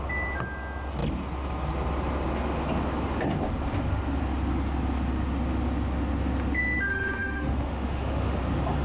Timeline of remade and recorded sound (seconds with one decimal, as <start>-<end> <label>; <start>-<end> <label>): 0.0-6.9 recorded; 6.9-8.4 remade; 8.4-8.8 recorded